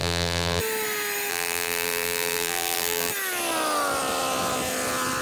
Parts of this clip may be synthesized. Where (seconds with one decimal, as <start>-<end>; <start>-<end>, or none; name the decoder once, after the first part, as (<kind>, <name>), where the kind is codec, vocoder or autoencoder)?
0.0-0.6 (vocoder, BigVGAN v2); 1.3-3.1

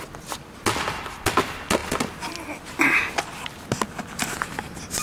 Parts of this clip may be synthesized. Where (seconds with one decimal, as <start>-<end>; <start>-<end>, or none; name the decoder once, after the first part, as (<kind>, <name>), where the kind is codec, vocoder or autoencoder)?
none

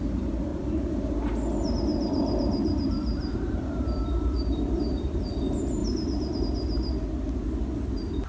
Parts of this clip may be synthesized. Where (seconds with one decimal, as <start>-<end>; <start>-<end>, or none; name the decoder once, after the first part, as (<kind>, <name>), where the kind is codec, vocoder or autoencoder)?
0.5-1.0 (vocoder, BigVGAN v2); 1.9-5.2; 5.8-6.4

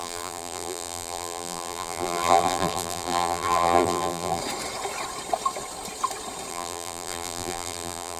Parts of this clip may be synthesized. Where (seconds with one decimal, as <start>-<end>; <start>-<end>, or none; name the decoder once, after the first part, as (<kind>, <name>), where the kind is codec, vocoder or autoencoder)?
0.0-4.4 (vocoder, BigVGAN v2); 6.5-8.2

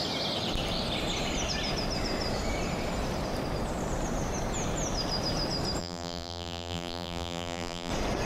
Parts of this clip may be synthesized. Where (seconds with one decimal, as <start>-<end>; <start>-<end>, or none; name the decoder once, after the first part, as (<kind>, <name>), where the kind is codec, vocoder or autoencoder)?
5.8-7.9 (vocoder, BigVGAN v2)

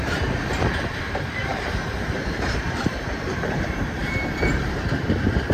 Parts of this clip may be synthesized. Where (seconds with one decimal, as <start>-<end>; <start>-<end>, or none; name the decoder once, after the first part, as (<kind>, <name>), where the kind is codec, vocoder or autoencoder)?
0.0-5.5 (vocoder, BigVGAN v2)

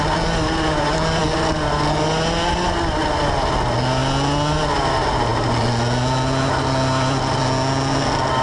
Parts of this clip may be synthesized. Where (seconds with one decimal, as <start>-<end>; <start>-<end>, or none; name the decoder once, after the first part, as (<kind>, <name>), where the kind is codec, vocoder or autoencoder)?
none